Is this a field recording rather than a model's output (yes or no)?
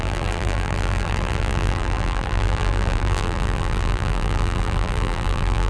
no